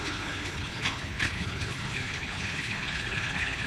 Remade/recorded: remade